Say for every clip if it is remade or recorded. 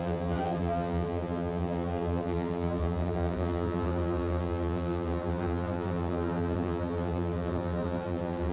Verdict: remade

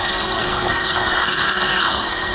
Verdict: remade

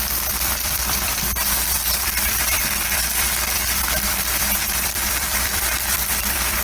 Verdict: remade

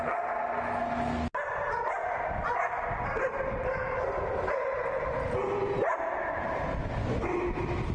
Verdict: recorded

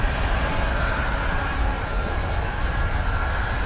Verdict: recorded